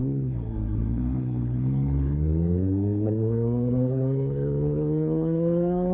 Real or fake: fake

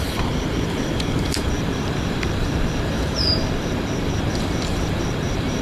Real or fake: fake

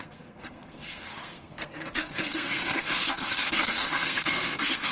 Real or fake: fake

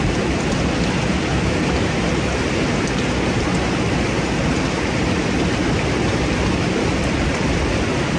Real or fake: real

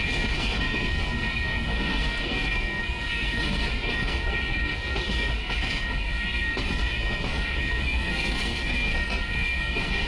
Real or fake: fake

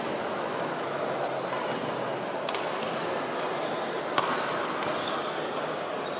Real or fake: real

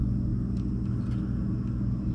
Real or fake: real